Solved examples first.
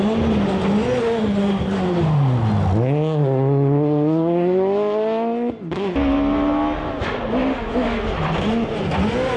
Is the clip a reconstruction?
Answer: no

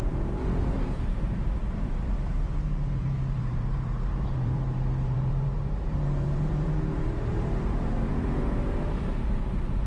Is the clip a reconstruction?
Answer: yes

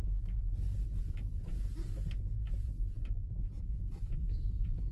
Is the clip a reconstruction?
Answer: yes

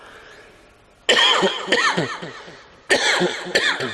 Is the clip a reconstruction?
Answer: no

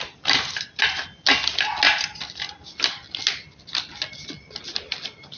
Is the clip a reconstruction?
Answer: no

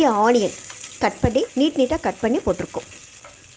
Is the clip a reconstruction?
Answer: no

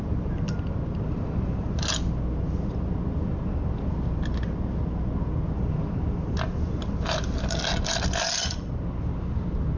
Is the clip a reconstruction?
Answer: no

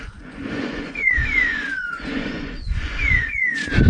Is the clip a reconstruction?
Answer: yes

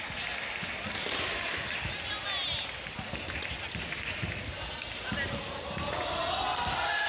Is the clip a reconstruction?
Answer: no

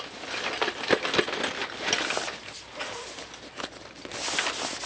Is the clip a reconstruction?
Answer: no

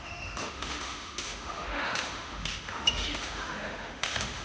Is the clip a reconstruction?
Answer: yes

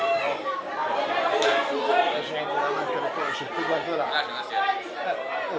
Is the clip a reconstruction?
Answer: no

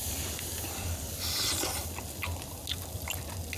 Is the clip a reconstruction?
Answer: no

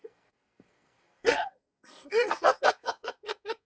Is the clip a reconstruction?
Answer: yes